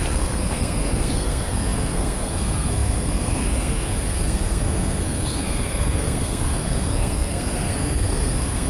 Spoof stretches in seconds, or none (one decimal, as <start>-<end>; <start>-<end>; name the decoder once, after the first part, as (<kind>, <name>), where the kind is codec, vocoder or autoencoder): 0.0-8.7 (codec, SNAC)